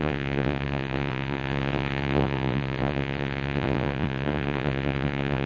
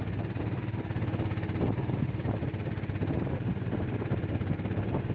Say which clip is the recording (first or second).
second